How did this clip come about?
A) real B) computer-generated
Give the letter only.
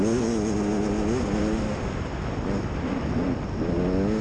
A